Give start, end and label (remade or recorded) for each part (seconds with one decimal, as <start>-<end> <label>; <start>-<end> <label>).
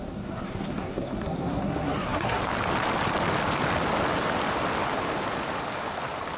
0.0-2.4 remade; 2.4-6.4 recorded